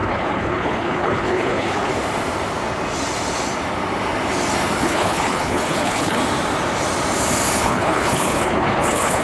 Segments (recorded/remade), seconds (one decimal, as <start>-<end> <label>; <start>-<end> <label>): 0.0-1.9 remade; 1.9-4.8 recorded; 4.8-6.2 remade; 6.2-7.6 recorded; 7.6-9.2 remade